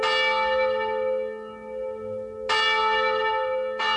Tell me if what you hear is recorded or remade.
recorded